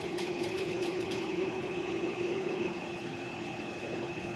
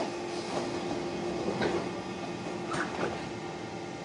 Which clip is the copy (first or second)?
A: first